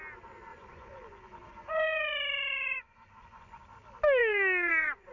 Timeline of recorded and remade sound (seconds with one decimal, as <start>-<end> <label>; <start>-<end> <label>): 0.0-0.5 recorded; 0.5-3.6 remade; 3.6-4.2 recorded; 4.2-5.1 remade